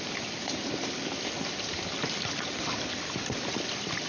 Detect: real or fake real